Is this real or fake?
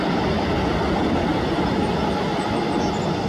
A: real